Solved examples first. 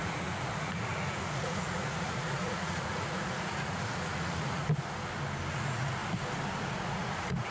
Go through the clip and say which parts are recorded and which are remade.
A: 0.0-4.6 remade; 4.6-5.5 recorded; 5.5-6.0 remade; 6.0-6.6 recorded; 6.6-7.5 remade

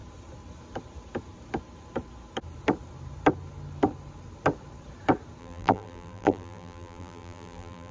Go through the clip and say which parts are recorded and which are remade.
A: 0.0-5.4 recorded; 5.4-7.9 remade

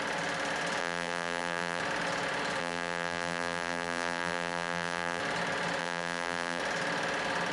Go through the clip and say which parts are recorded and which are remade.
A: 0.0-0.8 recorded; 0.8-1.8 remade; 1.8-2.6 recorded; 2.6-5.2 remade; 5.2-5.8 recorded; 5.8-6.6 remade; 6.6-7.5 recorded

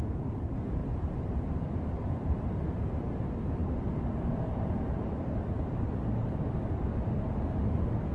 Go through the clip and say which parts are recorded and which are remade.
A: 0.0-0.8 recorded; 0.8-2.5 remade; 2.5-3.6 recorded; 3.6-8.1 remade

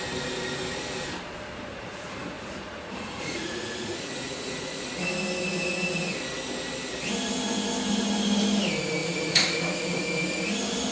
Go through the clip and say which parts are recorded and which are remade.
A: 0.0-1.7 recorded; 1.7-4.9 remade; 4.9-9.0 recorded; 9.0-10.0 remade; 10.0-10.9 recorded